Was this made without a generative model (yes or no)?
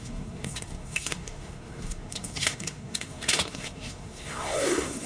no